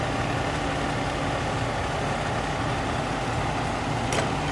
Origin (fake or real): real